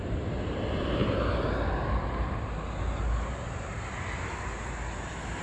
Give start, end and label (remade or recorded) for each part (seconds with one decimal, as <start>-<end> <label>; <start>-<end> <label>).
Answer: 0.0-1.0 remade; 1.0-3.3 recorded; 3.3-3.7 remade; 3.7-5.4 recorded

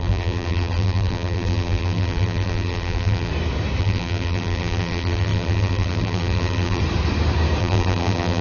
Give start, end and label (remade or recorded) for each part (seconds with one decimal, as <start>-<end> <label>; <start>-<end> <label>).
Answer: 0.0-3.3 remade; 3.3-3.8 recorded; 3.8-6.8 remade; 6.8-7.6 recorded; 7.6-8.4 remade

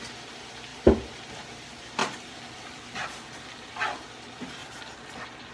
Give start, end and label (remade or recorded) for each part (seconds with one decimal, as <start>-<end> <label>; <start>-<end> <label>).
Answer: 0.0-5.5 recorded

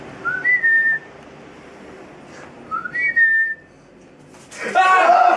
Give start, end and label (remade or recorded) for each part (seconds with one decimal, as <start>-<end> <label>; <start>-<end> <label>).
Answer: 0.0-0.4 recorded; 0.4-1.2 remade; 1.2-5.4 recorded

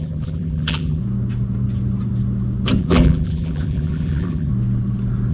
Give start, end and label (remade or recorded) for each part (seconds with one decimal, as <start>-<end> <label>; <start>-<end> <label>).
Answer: 0.0-1.0 remade; 1.0-2.8 recorded; 2.8-4.5 remade; 4.5-5.3 recorded

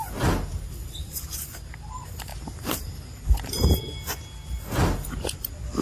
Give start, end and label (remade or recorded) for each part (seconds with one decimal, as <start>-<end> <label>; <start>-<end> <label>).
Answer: 0.0-2.3 recorded; 2.3-3.8 remade; 3.8-5.8 recorded

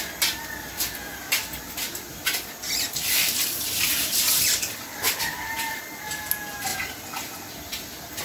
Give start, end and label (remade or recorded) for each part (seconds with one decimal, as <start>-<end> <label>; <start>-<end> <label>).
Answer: 0.0-1.1 recorded; 1.1-5.8 remade; 5.8-6.7 recorded; 6.7-8.2 remade

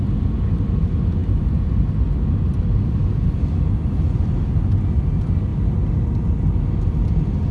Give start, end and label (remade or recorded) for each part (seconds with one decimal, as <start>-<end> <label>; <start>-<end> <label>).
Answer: 0.0-7.5 recorded